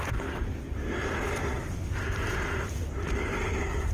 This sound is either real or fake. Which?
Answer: real